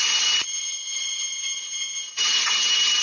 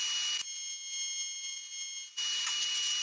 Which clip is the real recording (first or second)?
second